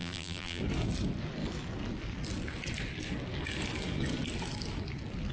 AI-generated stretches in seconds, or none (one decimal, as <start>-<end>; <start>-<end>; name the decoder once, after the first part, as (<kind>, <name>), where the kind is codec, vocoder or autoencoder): 0.0-0.6 (vocoder, BigVGAN v2)